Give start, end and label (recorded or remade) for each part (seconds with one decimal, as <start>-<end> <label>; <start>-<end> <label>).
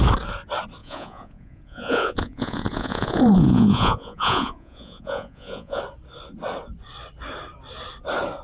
0.0-0.8 recorded; 0.8-5.8 remade; 5.8-8.4 recorded